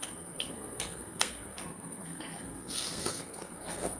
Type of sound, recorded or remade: remade